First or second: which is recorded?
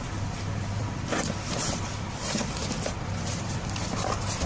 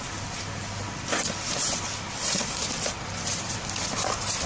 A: second